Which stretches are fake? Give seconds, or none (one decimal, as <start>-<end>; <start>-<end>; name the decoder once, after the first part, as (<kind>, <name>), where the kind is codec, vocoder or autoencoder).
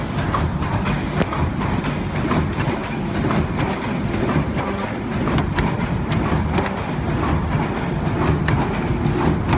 2.8-6.4 (vocoder, BigVGAN v2)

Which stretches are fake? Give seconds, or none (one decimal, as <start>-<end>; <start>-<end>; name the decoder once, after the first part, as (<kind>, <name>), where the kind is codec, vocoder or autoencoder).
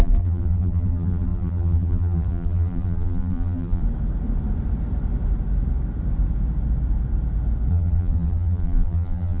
0.0-3.8 (vocoder, BigVGAN v2); 7.7-9.4